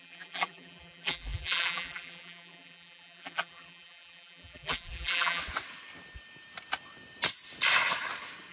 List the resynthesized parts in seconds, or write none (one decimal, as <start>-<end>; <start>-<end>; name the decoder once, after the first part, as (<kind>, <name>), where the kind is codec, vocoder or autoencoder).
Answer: 0.0-5.4 (vocoder, BigVGAN v2)